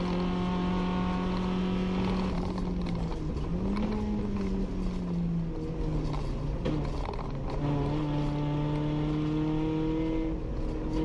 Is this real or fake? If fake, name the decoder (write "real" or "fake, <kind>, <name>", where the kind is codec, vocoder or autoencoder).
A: real